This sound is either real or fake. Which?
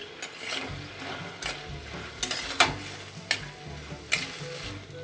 real